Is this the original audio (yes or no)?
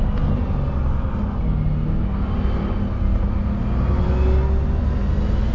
yes